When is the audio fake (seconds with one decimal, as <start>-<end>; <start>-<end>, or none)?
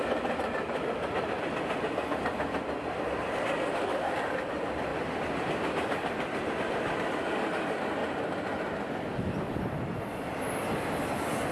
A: none